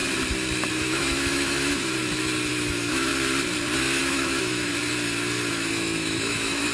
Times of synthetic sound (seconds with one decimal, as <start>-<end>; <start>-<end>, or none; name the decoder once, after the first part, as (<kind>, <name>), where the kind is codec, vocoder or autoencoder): 0.7-2.0 (autoencoder, DAC-VAE); 2.5-3.1; 4.0-4.7; 5.5-6.7